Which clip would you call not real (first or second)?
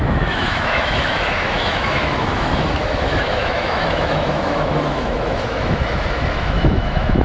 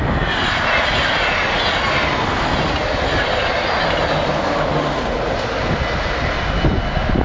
first